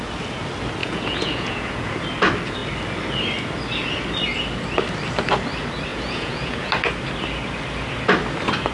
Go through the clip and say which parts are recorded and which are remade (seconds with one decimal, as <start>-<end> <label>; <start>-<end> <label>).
0.0-0.8 recorded; 0.8-2.0 remade; 2.0-5.9 recorded; 5.9-6.7 remade; 6.7-8.7 recorded